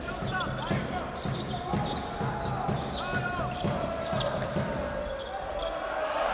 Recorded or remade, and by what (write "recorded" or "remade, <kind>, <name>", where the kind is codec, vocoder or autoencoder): recorded